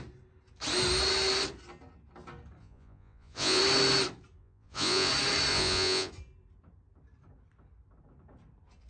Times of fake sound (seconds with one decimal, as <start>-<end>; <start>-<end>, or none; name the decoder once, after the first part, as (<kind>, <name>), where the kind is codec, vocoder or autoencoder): 2.6-3.6 (vocoder, Vocos); 4.4-5.1; 5.5-6.1

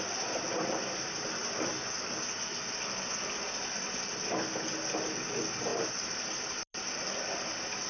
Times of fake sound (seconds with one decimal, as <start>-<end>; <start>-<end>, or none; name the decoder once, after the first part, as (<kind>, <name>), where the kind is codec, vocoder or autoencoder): none